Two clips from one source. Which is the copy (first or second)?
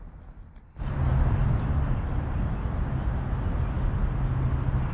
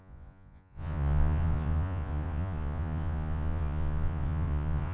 second